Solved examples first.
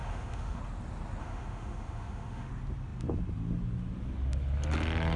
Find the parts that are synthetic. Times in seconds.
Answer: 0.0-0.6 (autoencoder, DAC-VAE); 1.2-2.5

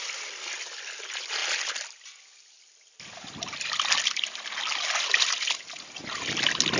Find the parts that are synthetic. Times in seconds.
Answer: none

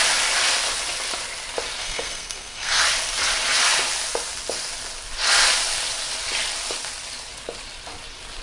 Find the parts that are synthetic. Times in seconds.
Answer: 1.8-2.8 (codec, SNAC)